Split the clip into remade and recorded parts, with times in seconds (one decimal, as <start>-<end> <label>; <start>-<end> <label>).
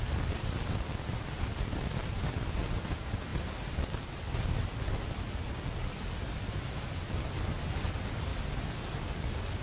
0.0-1.5 recorded; 1.5-2.3 remade; 2.3-9.6 recorded